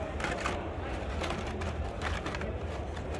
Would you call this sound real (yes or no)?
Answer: yes